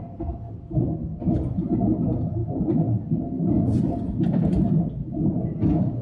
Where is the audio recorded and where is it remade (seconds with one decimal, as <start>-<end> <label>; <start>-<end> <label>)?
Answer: 0.0-6.0 recorded